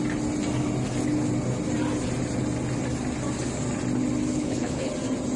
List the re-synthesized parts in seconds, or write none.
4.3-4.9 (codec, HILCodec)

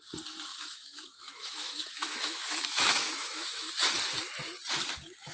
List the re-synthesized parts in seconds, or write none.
0.5-3.7 (autoencoder, DAC-VAE)